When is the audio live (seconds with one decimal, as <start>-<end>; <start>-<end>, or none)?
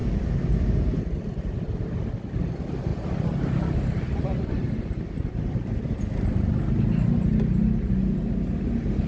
2.1-2.9; 6.7-9.1